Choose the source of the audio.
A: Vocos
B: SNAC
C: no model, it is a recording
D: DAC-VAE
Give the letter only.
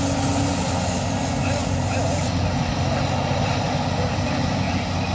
C